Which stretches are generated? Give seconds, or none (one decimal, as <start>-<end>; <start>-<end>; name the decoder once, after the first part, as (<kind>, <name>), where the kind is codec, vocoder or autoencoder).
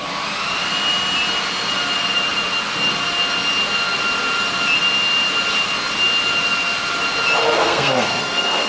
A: 7.4-8.7 (codec, SNAC)